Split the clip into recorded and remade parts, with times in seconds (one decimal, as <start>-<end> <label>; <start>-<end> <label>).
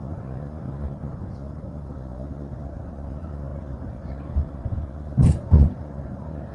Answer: 0.0-6.5 remade